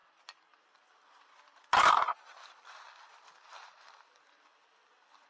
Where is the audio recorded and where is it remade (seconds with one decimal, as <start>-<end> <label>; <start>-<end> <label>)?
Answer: 0.0-5.3 recorded